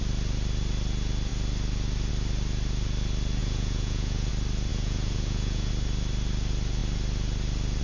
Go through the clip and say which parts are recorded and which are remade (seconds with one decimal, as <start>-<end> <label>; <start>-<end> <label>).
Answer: 0.0-3.4 recorded; 3.4-4.3 remade; 4.3-4.7 recorded; 4.7-5.7 remade; 5.7-7.8 recorded